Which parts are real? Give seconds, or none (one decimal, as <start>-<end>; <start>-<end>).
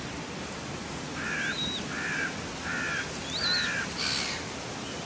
0.0-5.1